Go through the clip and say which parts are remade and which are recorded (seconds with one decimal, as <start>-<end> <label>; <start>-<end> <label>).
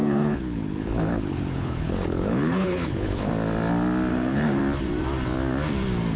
0.0-3.3 remade; 3.3-4.1 recorded; 4.1-4.6 remade; 4.6-6.2 recorded